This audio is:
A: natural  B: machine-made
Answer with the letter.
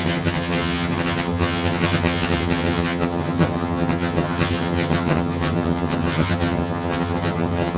B